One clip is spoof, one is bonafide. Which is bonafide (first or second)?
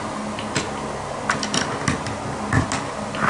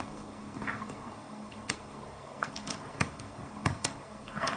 first